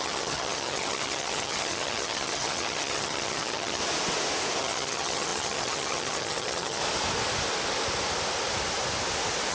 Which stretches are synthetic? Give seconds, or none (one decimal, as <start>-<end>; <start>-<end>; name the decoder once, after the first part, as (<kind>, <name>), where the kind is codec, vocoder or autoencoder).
0.0-3.8 (vocoder, HiFi-GAN); 4.6-6.8